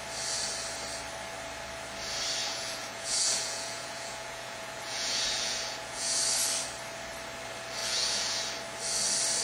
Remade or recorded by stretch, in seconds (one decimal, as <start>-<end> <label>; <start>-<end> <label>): 0.0-2.4 recorded; 2.4-6.2 remade; 6.2-7.8 recorded; 7.8-8.4 remade; 8.4-9.4 recorded